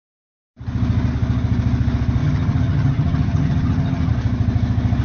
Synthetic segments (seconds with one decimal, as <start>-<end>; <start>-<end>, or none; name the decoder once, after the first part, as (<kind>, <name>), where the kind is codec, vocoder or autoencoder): 2.2-4.1 (vocoder, HiFi-GAN)